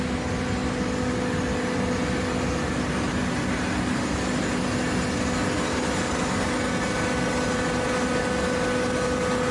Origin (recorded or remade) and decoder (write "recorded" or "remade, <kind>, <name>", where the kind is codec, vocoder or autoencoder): recorded